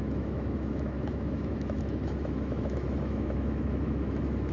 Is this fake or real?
fake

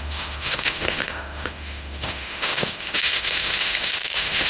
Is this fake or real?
fake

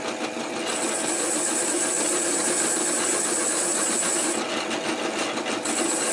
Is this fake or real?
real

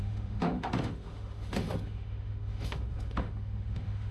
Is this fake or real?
fake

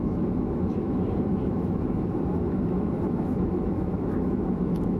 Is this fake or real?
fake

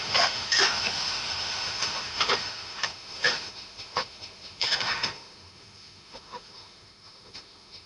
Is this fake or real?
fake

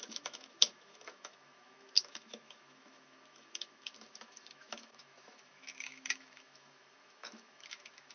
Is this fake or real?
fake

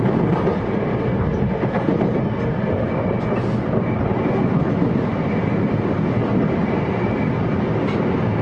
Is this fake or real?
real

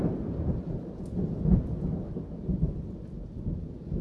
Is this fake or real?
real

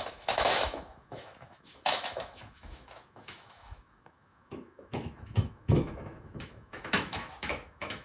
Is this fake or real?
fake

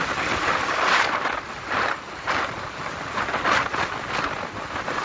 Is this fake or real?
real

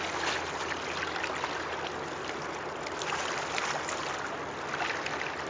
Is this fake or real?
real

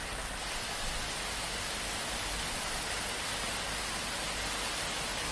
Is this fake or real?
real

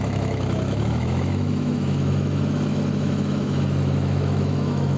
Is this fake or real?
fake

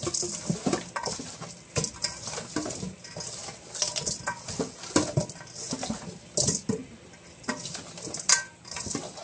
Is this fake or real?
real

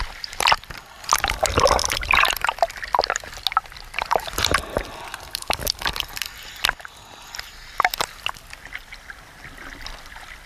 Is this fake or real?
real